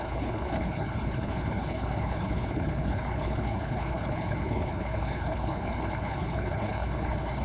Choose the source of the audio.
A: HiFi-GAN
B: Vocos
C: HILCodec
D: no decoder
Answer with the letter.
C